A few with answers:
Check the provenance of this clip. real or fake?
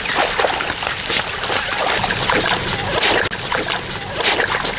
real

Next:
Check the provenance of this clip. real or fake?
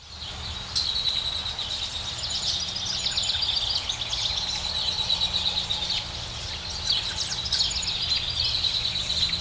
real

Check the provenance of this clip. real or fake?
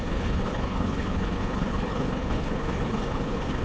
fake